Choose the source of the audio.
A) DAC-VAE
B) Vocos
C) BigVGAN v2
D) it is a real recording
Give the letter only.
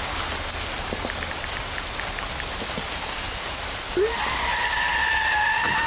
D